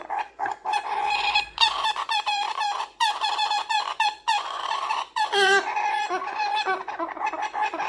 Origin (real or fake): fake